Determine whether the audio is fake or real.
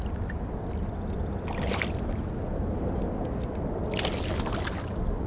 real